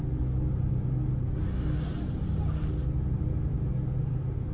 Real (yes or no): yes